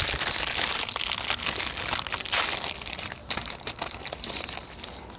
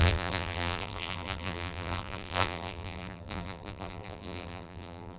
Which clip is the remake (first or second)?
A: second